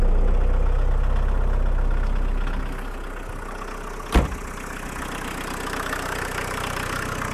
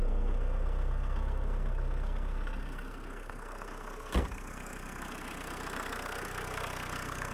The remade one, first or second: second